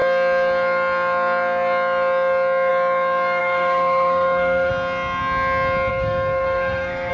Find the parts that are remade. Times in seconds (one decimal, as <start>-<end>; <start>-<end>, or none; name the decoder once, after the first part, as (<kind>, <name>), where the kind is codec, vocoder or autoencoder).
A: 3.4-4.7 (codec, SNAC); 5.9-7.1